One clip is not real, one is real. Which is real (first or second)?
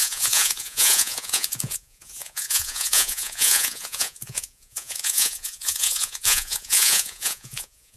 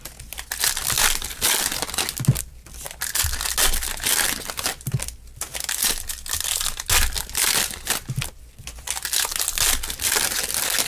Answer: second